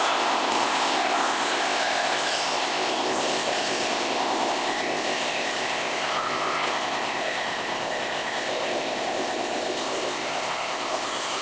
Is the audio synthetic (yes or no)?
yes